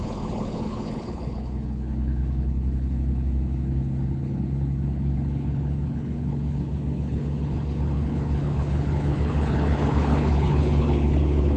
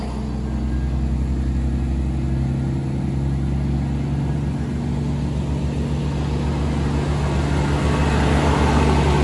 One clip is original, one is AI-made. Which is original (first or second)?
second